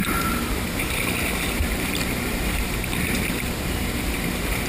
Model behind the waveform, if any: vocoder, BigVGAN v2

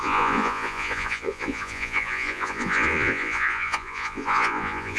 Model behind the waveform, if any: vocoder, Vocos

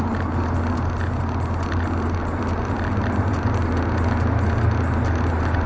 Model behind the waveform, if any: none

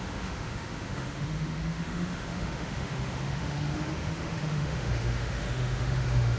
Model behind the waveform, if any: autoencoder, DAC-VAE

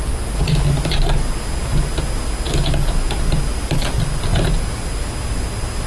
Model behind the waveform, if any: none